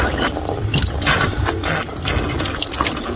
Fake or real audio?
real